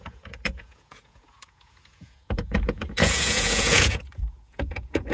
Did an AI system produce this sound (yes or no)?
yes